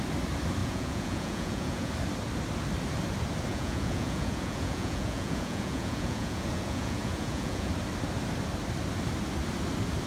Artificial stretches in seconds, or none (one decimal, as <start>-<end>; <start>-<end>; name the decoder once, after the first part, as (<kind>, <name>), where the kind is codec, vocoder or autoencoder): 0.6-1.9 (vocoder, Vocos); 3.5-7.7